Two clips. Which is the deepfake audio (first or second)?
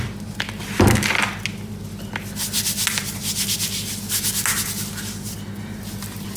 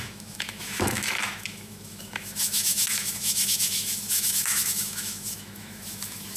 second